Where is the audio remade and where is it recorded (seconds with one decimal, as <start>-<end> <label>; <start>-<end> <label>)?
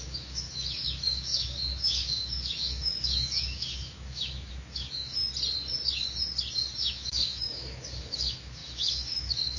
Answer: 0.0-5.2 remade; 5.2-6.8 recorded; 6.8-9.6 remade